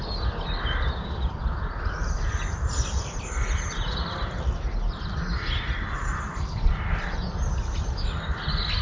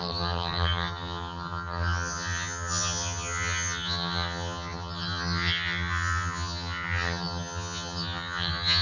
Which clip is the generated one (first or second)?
second